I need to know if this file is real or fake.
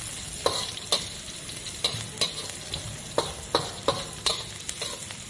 real